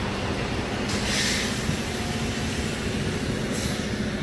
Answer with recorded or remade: recorded